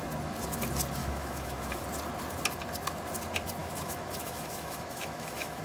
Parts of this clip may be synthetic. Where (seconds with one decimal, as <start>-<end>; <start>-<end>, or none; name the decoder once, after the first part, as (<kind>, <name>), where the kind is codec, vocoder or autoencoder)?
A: 1.0-1.8 (autoencoder, DAC-VAE); 3.6-5.6